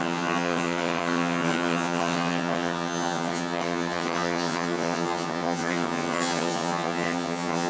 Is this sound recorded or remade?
remade